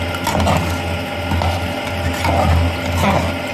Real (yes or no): yes